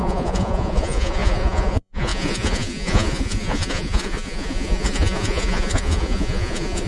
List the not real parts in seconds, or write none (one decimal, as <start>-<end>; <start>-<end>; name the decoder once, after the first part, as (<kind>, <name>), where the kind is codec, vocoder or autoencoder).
0.0-6.9 (vocoder, Vocos)